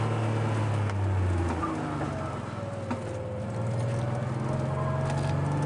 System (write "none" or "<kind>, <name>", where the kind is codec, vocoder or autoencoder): none